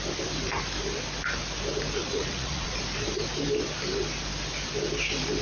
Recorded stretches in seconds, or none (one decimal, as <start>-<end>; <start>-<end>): 0.0-2.0; 2.8-5.4